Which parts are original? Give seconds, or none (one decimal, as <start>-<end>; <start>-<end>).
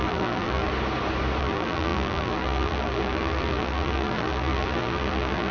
0.7-1.4